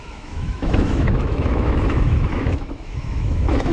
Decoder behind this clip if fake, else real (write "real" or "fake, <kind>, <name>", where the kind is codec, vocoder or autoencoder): fake, autoencoder, DAC-VAE